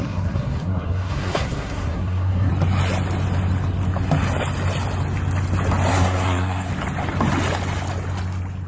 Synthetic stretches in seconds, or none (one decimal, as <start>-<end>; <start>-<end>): 0.0-2.5; 5.9-6.7